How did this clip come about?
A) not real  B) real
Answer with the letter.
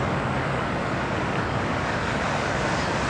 A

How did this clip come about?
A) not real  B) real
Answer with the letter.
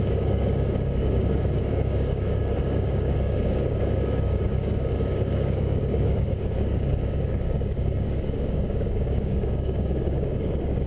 A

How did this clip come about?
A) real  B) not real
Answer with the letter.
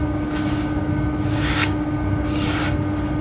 B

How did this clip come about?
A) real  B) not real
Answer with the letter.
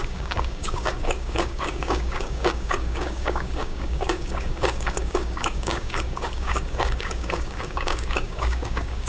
B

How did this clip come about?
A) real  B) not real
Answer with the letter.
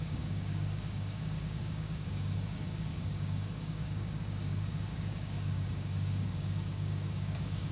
B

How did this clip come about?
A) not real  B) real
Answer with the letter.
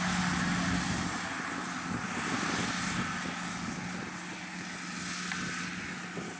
B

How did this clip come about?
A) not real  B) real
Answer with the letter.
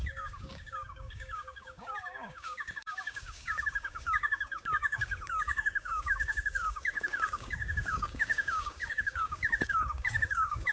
A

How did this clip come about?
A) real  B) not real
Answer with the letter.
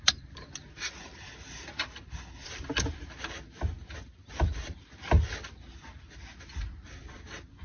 A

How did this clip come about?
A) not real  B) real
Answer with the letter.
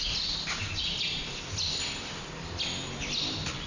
B